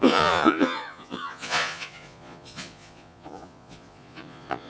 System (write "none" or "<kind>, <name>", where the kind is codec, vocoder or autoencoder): vocoder, Vocos